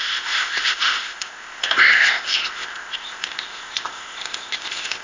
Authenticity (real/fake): fake